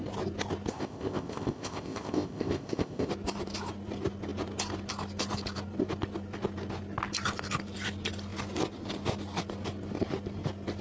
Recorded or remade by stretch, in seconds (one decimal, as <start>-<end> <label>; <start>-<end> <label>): 0.0-0.7 recorded; 0.7-3.1 remade; 3.1-10.8 recorded